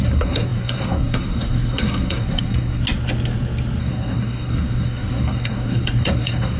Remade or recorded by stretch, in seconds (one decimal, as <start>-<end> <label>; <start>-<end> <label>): 0.0-2.8 remade; 2.8-3.8 recorded; 3.8-6.6 remade